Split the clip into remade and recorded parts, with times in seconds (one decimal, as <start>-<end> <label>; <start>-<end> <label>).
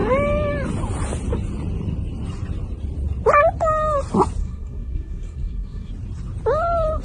0.0-4.4 recorded; 4.4-5.9 remade; 5.9-7.0 recorded